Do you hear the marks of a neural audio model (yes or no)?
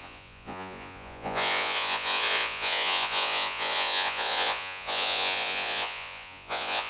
yes